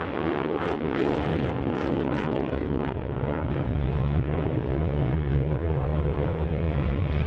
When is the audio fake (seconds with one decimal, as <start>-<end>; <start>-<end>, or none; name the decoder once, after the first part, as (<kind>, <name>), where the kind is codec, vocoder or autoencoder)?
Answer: 0.0-7.3 (vocoder, WaveNeXt)